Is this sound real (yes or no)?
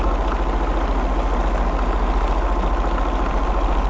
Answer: yes